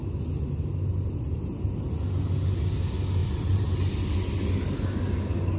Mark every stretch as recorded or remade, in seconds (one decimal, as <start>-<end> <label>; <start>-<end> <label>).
0.0-3.2 recorded; 3.2-3.8 remade; 3.8-5.6 recorded